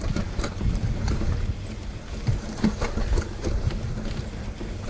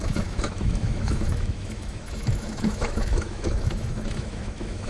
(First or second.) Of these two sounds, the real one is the first